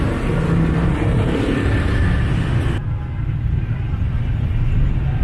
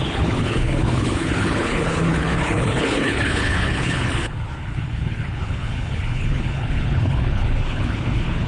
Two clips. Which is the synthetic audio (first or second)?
second